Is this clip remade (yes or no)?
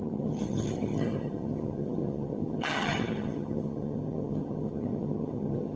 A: yes